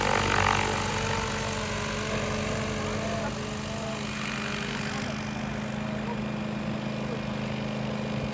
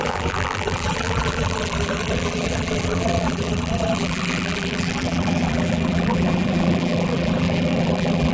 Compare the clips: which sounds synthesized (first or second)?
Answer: second